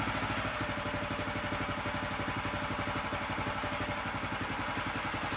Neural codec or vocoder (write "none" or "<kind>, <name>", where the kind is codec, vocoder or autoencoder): none